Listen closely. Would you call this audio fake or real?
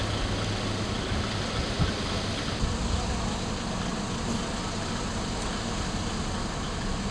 real